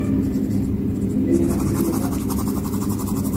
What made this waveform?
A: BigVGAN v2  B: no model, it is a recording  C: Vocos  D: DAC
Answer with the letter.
B